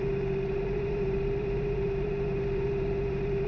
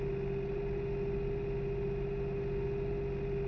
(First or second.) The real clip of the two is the second